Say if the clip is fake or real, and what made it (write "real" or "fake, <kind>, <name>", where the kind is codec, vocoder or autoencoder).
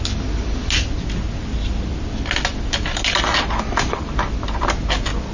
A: real